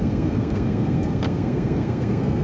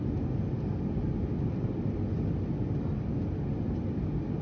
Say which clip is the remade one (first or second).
first